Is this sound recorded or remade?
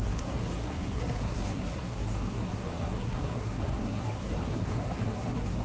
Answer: remade